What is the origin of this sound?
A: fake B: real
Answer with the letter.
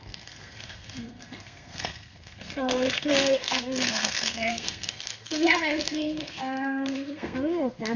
A